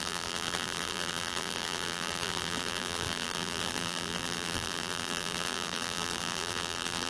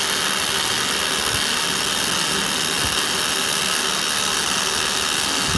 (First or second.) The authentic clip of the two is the second